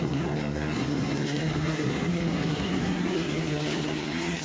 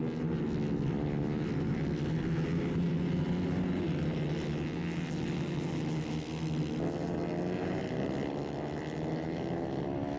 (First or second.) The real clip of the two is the second